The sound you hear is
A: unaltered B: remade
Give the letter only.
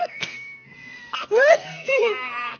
B